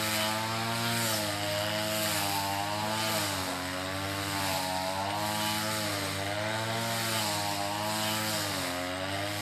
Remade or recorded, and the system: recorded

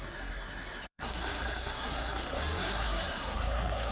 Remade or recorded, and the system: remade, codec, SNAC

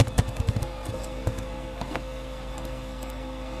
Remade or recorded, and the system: remade, codec, SNAC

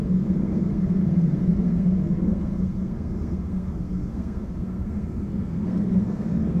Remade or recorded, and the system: remade, codec, SNAC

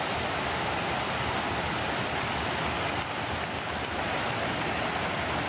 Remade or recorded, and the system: recorded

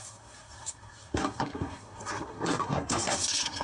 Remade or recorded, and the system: remade, codec, SNAC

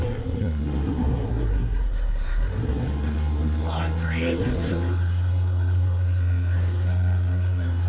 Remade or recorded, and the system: remade, codec, SNAC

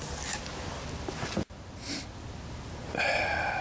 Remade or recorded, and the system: recorded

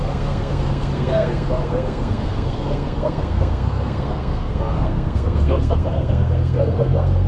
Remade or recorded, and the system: remade, codec, SNAC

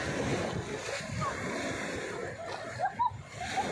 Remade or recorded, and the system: recorded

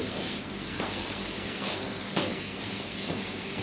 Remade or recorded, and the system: remade, codec, SNAC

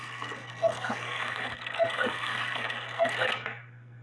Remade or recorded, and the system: remade, codec, SNAC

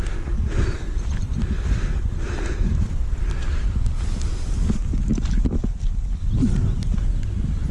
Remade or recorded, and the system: recorded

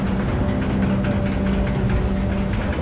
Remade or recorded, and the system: recorded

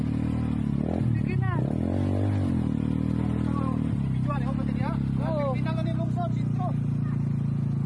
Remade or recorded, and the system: recorded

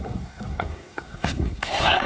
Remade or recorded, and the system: remade, codec, SNAC